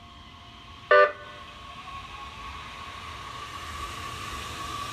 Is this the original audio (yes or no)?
yes